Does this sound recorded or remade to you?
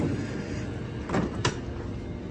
recorded